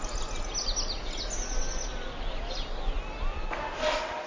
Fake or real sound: real